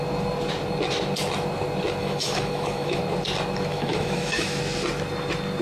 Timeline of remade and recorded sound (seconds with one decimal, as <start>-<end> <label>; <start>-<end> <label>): 0.0-2.0 recorded; 2.0-3.0 remade; 3.0-3.7 recorded; 3.7-4.6 remade; 4.6-5.6 recorded